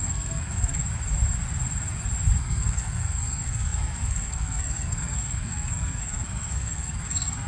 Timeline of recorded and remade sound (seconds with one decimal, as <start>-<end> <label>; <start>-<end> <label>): 0.0-0.8 remade; 0.8-2.4 recorded; 2.4-7.5 remade